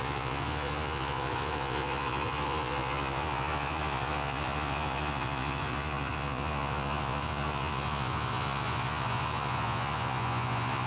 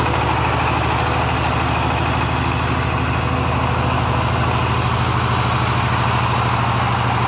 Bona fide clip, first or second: second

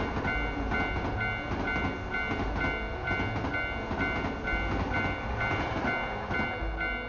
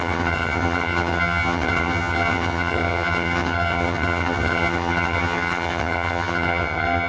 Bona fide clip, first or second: first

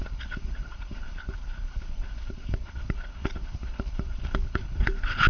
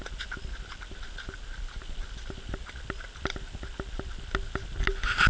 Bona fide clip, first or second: second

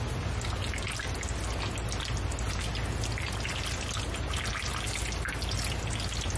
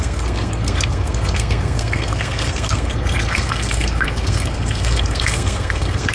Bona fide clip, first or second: first